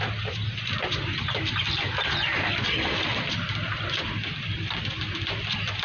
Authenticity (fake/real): real